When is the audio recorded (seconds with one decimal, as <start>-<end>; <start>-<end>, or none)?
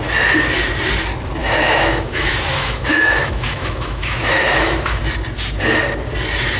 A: 0.0-1.4; 5.0-6.6